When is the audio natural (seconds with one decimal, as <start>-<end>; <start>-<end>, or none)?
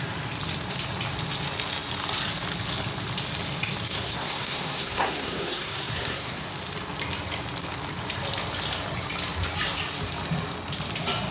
0.0-3.9; 6.5-11.3